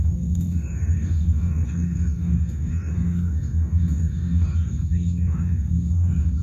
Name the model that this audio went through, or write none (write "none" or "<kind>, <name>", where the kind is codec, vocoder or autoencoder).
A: codec, DAC